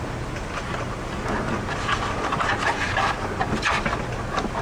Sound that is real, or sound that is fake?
real